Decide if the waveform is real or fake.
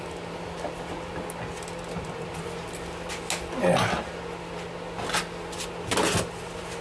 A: real